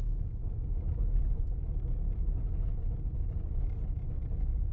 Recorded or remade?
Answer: recorded